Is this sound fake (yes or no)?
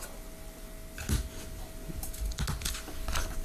no